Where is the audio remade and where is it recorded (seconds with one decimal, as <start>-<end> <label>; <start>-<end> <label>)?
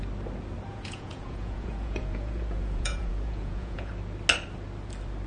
0.0-0.7 recorded; 0.7-3.9 remade; 3.9-5.3 recorded